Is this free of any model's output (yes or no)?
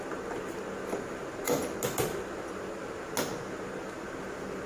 yes